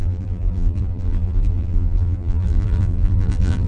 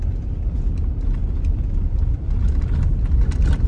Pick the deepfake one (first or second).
first